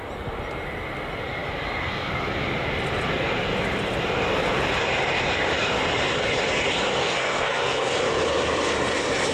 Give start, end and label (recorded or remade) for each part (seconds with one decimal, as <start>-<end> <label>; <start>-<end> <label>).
0.0-7.0 recorded; 7.0-7.9 remade; 7.9-9.3 recorded